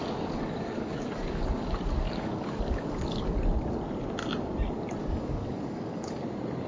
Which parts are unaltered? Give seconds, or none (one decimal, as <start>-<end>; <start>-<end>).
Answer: 3.3-5.0; 6.2-6.7